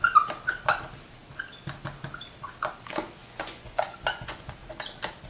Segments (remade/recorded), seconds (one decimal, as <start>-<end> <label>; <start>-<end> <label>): 0.0-3.2 recorded; 3.2-4.5 remade; 4.5-5.3 recorded